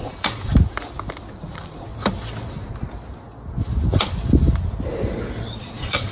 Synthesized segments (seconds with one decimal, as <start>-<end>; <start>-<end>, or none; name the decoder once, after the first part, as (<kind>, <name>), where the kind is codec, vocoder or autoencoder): 0.0-0.5 (vocoder, Vocos); 1.4-1.9; 5.6-6.1